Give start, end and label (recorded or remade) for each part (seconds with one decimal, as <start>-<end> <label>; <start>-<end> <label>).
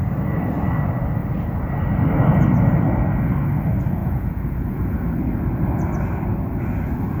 0.0-4.0 recorded; 4.0-5.1 remade; 5.1-7.2 recorded